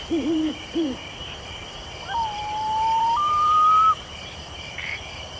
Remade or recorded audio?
remade